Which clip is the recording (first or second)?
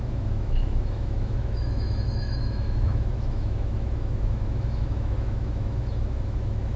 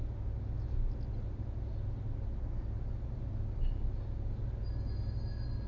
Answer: second